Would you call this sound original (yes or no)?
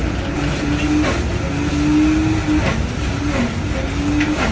yes